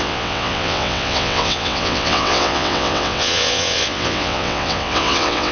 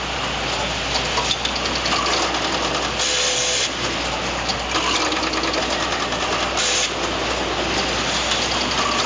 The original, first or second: second